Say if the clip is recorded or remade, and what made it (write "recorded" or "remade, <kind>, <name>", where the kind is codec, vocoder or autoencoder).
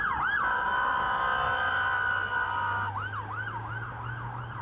recorded